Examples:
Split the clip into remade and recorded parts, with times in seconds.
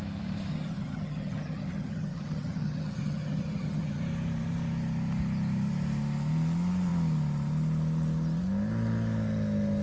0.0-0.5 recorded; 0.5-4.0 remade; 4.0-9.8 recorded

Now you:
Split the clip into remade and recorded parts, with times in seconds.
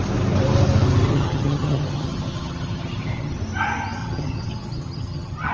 0.0-1.1 recorded; 1.1-3.4 remade; 3.4-4.0 recorded; 4.0-5.5 remade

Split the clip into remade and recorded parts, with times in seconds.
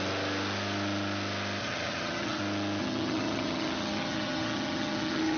0.0-1.6 recorded; 1.6-2.4 remade; 2.4-2.8 recorded; 2.8-5.4 remade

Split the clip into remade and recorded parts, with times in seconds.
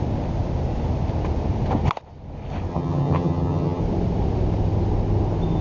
0.0-2.7 recorded; 2.7-3.8 remade; 3.8-5.6 recorded